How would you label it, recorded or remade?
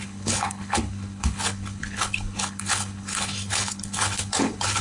remade